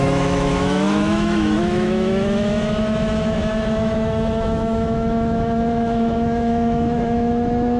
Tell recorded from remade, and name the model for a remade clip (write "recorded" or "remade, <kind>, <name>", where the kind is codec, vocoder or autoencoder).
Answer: remade, autoencoder, DAC-VAE